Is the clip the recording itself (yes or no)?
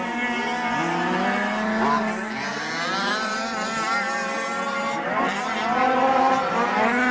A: yes